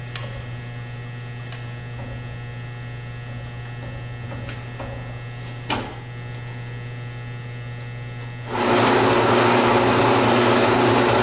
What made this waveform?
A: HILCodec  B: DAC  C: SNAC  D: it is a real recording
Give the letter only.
D